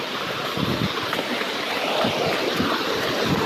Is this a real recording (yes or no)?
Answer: yes